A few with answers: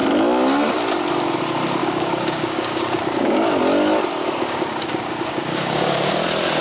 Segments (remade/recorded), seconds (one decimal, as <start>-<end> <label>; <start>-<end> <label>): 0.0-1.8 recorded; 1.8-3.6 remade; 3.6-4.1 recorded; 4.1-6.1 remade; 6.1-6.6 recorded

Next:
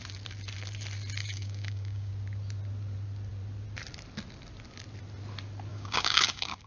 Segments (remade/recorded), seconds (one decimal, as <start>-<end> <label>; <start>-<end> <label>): 0.0-1.2 recorded; 1.2-2.1 remade; 2.1-5.7 recorded; 5.7-6.7 remade

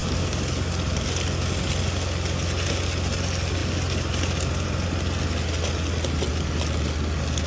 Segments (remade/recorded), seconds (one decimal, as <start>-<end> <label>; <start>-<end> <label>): 0.0-0.7 remade; 0.7-7.5 recorded

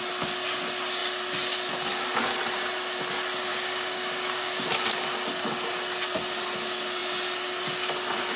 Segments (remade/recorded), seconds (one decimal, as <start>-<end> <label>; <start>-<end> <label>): 0.0-3.5 recorded; 3.5-4.6 remade; 4.6-8.4 recorded

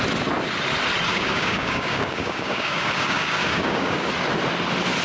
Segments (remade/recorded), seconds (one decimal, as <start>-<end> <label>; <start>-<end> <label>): 0.0-1.1 recorded; 1.1-4.1 remade; 4.1-5.0 recorded

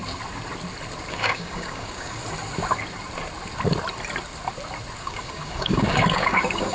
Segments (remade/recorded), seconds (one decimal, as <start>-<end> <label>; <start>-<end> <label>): 0.0-1.1 recorded; 1.1-2.2 remade; 2.2-5.0 recorded; 5.0-6.7 remade